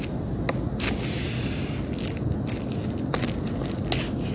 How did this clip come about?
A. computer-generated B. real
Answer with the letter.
B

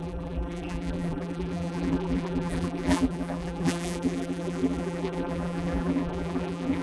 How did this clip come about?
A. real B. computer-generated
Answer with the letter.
B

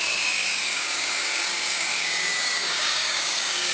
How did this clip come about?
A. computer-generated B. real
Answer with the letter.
A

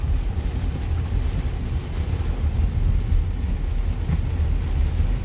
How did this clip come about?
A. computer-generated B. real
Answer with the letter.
B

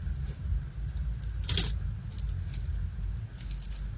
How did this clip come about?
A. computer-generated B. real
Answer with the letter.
B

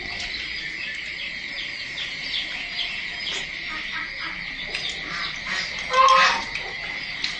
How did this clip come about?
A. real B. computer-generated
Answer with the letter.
A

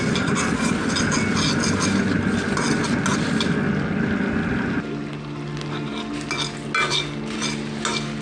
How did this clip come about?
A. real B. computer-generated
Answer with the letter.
A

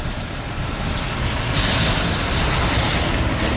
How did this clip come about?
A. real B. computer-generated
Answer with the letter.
A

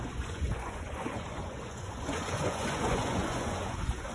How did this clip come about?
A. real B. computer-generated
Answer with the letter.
B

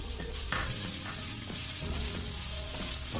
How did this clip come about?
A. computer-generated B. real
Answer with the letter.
A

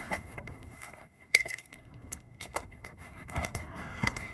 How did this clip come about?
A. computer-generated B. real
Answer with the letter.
A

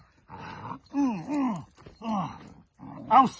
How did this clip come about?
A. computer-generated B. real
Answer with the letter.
B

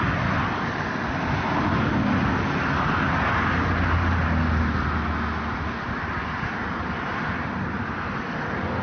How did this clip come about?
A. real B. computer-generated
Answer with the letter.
A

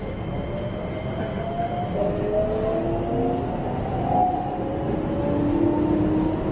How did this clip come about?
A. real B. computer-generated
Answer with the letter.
A